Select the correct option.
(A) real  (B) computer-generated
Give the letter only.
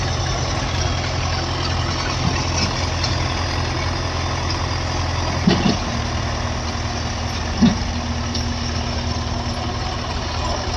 A